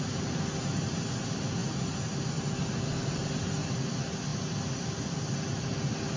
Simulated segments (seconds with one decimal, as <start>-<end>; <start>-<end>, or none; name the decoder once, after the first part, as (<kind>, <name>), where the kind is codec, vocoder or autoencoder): none